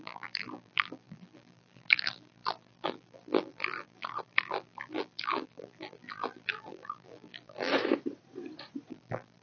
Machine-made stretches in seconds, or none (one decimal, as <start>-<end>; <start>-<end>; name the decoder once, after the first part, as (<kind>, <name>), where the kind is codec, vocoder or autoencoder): 0.0-7.7 (vocoder, BigVGAN v2); 8.9-9.4